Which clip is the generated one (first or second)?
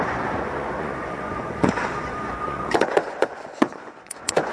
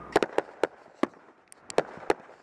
first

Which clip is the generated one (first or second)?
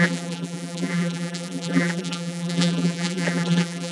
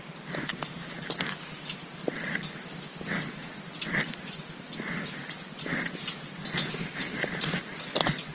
first